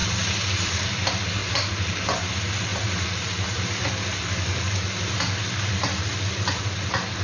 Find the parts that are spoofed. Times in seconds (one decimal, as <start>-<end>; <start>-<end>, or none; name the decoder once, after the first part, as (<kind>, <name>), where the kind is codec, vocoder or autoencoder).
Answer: none